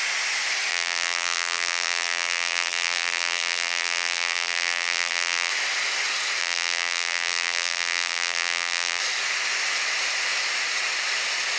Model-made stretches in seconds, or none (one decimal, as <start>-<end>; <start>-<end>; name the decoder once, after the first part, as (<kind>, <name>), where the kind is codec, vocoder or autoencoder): 0.7-5.5 (vocoder, BigVGAN v2); 6.4-9.0